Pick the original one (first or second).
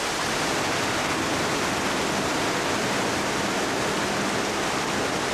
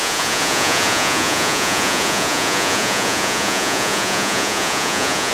first